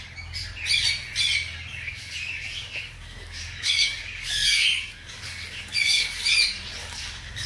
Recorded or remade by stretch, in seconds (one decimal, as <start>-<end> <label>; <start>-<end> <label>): 0.0-1.7 recorded; 1.7-6.2 remade; 6.2-6.8 recorded; 6.8-7.5 remade